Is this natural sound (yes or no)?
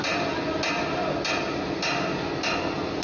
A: yes